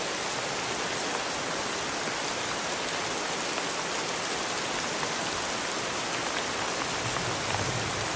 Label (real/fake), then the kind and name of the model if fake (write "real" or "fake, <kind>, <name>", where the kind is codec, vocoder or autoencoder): real